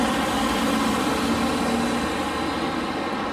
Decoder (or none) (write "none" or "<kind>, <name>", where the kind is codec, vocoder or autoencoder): none